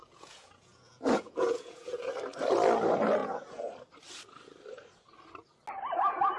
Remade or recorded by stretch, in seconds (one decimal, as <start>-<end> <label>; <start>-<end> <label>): 0.0-2.1 remade; 2.1-3.2 recorded; 3.2-3.7 remade; 3.7-6.4 recorded

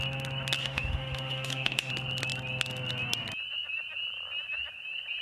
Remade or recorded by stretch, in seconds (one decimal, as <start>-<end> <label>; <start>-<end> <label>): 0.0-0.6 recorded; 0.6-1.9 remade; 1.9-5.2 recorded

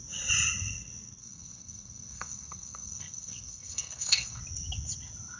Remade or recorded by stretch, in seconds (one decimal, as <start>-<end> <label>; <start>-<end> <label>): 0.0-1.2 recorded; 1.2-4.4 remade; 4.4-5.4 recorded

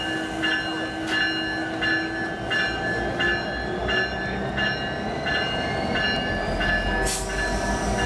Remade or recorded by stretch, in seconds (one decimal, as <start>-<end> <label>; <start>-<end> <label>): 0.0-8.1 recorded

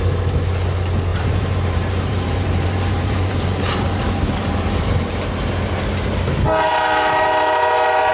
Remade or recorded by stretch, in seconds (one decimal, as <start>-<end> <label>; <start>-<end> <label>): 0.0-1.1 recorded; 1.1-5.3 remade; 5.3-8.1 recorded